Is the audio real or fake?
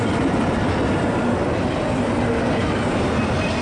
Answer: real